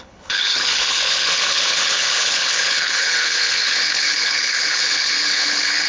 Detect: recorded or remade remade